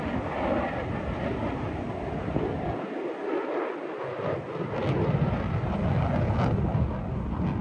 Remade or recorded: recorded